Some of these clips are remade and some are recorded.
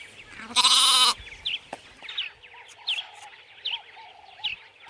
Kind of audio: recorded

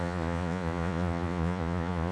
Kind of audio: remade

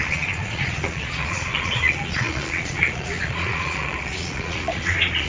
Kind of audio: remade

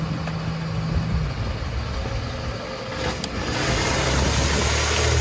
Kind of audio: recorded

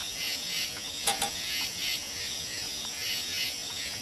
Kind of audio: remade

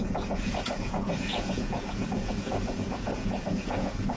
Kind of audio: remade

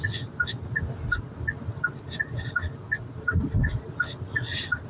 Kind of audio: recorded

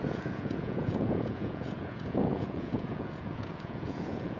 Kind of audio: remade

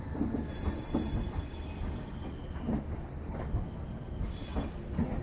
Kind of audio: recorded